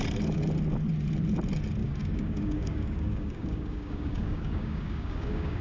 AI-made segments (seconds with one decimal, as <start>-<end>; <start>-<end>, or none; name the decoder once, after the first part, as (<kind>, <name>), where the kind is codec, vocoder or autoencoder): 1.8-5.6 (codec, DAC)